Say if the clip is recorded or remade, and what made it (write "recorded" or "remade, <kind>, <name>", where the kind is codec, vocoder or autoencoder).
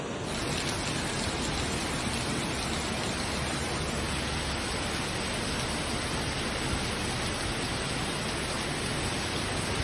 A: recorded